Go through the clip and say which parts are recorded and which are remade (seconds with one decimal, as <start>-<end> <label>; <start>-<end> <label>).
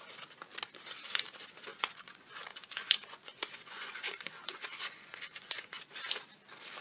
0.0-1.7 recorded; 1.7-5.8 remade; 5.8-6.8 recorded